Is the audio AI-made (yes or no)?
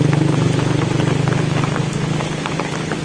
no